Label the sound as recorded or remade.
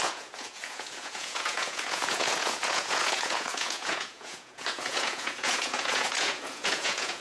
remade